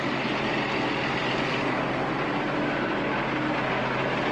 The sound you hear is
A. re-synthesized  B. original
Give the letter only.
B